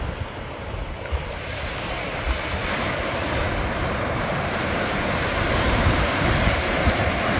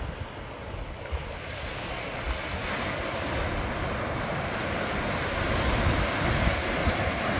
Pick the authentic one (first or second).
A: second